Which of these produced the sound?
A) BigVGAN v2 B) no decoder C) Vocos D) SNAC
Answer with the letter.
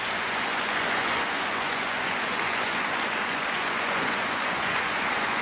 C